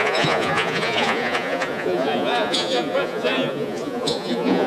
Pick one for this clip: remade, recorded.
remade